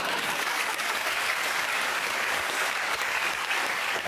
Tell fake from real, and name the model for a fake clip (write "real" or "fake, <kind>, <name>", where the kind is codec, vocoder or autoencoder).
fake, codec, DAC